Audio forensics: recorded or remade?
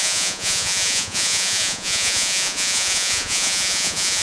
remade